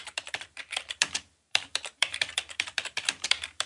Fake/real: fake